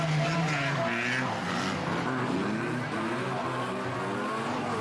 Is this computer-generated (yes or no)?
no